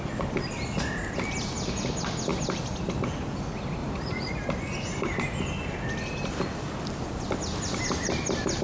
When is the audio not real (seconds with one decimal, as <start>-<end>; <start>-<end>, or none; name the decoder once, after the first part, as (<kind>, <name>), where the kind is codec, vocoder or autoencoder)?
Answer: 3.8-4.3 (vocoder, Vocos)